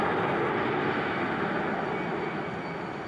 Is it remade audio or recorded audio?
recorded